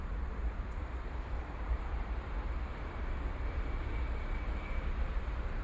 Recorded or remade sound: remade